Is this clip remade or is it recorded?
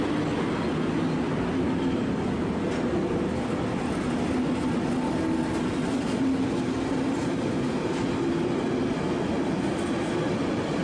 recorded